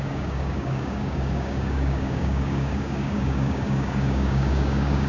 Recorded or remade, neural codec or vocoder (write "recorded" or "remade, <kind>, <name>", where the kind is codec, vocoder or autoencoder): remade, codec, DAC